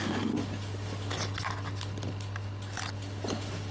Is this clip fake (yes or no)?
no